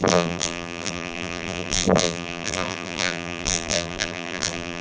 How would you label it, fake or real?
fake